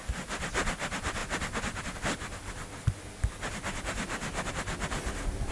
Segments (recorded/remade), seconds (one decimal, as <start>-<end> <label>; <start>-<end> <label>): 0.0-5.5 recorded